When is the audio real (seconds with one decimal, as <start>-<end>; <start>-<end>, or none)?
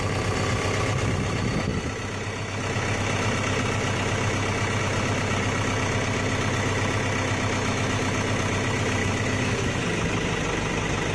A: 0.0-9.0; 9.8-11.1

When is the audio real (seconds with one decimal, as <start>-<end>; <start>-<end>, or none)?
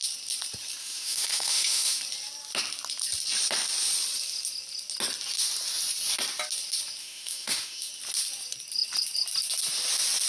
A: 0.0-0.8; 2.0-7.0; 7.9-10.3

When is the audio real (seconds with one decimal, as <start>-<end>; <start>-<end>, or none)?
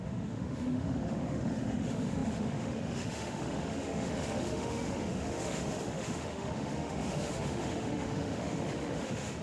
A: none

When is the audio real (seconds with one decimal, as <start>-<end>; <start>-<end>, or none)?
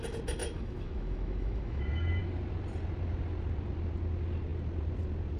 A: 0.0-0.4; 1.8-5.4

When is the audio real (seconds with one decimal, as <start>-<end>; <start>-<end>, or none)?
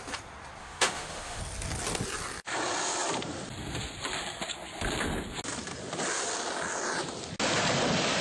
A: 0.0-0.6; 1.4-8.2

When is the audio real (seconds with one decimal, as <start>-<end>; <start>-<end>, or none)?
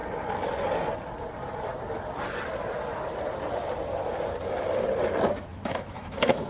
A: 0.0-5.5